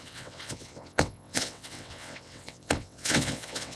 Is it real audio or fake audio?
fake